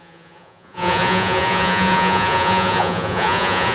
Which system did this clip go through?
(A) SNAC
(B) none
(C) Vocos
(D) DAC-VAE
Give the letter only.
C